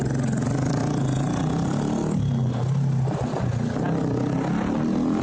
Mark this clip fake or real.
real